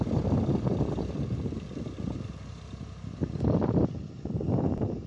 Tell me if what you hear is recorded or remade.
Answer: recorded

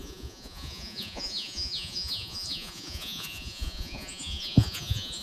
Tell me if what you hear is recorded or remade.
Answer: remade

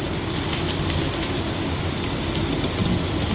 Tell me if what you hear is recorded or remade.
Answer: recorded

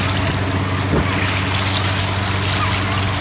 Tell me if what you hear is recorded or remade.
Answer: recorded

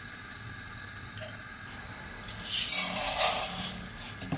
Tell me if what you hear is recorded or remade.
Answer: recorded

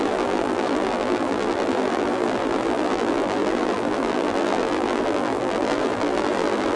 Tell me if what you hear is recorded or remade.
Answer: remade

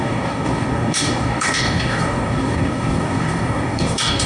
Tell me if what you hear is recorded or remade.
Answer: remade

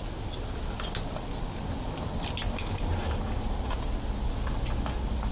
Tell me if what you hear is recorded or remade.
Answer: recorded